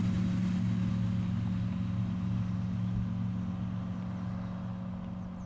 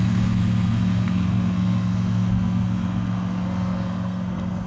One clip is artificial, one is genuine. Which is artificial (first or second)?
second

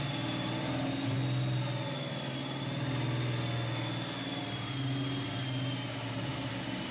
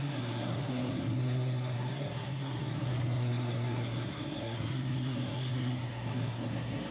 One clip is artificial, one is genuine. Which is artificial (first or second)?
second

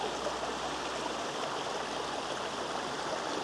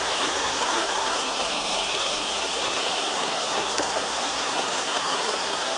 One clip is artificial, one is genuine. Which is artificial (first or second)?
second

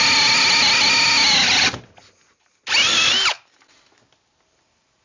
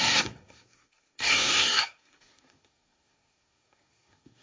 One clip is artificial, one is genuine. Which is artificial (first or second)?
second